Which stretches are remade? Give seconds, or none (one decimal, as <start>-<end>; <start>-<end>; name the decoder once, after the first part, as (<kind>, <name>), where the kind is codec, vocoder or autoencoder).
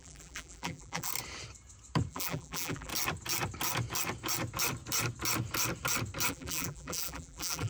0.0-1.1 (vocoder, BigVGAN v2); 2.1-2.9; 6.3-7.7